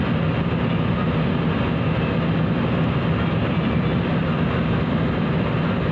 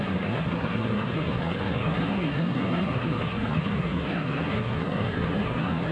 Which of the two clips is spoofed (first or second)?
second